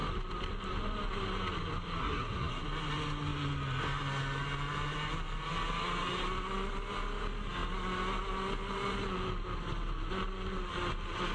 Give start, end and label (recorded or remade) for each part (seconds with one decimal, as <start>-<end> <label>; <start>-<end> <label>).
0.0-2.0 recorded; 2.0-2.6 remade; 2.6-11.3 recorded